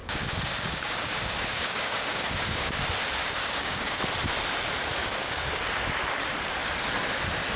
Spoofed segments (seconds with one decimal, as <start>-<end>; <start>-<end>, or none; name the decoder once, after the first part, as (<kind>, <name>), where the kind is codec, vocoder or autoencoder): 0.0-2.8 (codec, DAC); 3.2-4.0; 5.0-5.6